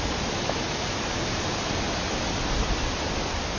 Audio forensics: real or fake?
real